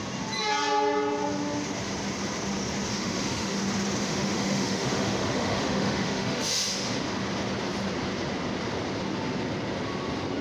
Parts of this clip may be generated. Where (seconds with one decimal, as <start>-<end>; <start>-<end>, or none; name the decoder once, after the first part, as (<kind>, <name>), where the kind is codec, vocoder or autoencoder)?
2.9-3.6 (autoencoder, DAC-VAE); 4.0-6.9